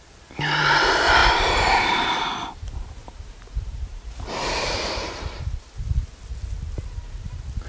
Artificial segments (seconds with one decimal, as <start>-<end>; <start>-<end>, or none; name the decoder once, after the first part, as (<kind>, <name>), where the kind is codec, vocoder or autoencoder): 1.2-5.8 (vocoder, BigVGAN v2)